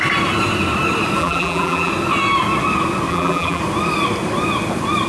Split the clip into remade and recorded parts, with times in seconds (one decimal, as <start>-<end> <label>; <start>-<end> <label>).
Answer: 0.0-1.2 recorded; 1.2-1.9 remade; 1.9-3.1 recorded; 3.1-3.6 remade; 3.6-5.1 recorded